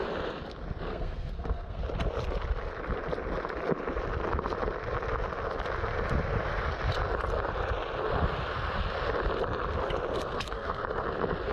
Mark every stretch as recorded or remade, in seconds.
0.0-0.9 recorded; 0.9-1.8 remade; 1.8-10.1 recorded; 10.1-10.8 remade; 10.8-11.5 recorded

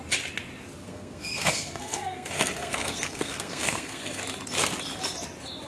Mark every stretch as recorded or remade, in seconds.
0.0-0.8 recorded; 0.8-4.2 remade; 4.2-5.7 recorded

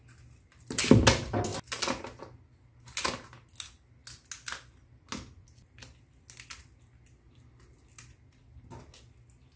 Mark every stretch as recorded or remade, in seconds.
0.0-9.6 recorded

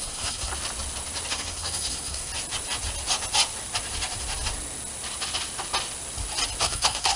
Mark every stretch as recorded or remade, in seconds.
0.0-0.5 remade; 0.5-1.3 recorded; 1.3-2.3 remade; 2.3-6.6 recorded; 6.6-7.2 remade

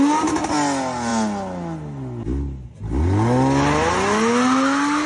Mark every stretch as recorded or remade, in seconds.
0.0-5.1 recorded

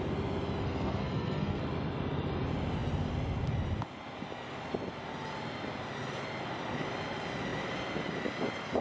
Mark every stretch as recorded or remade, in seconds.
0.0-0.6 recorded; 0.6-1.6 remade; 1.6-8.8 recorded

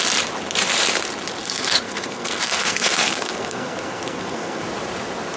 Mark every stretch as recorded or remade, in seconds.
0.0-1.4 recorded; 1.4-4.6 remade; 4.6-5.4 recorded